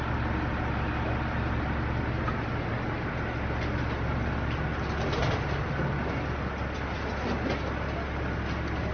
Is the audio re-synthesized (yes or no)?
no